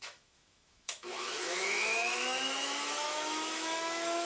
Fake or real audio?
fake